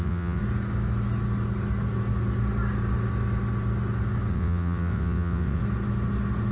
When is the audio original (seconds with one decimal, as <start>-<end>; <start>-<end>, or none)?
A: 0.4-4.3; 5.6-6.5